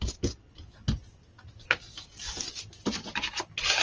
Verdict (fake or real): real